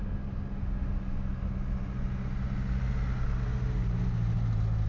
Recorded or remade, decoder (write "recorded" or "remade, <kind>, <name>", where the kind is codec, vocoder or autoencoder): recorded